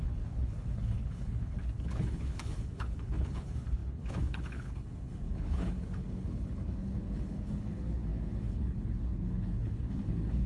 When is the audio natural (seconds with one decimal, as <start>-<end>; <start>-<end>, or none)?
none